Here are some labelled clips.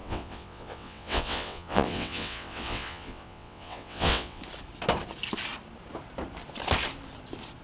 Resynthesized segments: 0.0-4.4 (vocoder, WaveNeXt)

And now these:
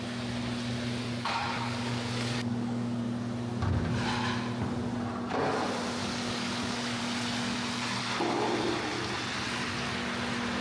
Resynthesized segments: 1.0-3.0 (codec, DAC); 6.0-7.0

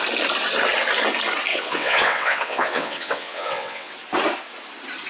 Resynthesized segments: 1.5-3.9 (vocoder, WaveNeXt)

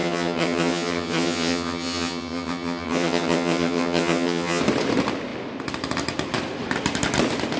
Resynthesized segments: 0.0-4.6 (vocoder, HiFi-GAN)

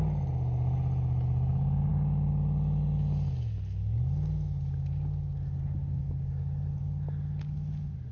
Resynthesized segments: none

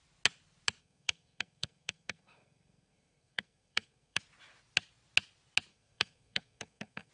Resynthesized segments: 0.8-4.2 (codec, SNAC); 5.7-7.1

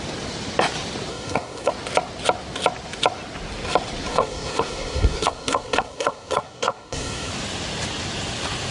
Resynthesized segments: 1.1-1.7 (codec, SNAC); 4.1-7.3

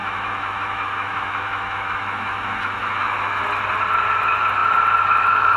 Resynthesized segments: 0.0-3.4 (autoencoder, DAC-VAE)